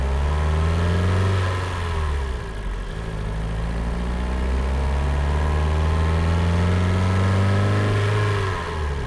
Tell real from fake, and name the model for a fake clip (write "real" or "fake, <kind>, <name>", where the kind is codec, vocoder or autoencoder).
real